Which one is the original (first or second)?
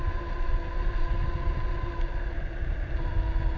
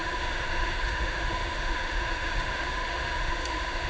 first